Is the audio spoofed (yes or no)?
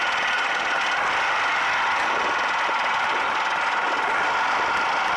no